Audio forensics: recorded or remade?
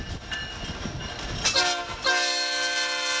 recorded